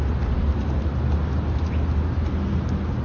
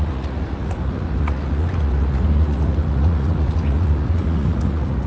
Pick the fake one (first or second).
second